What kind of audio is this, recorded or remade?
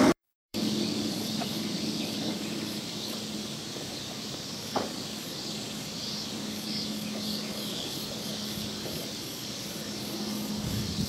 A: remade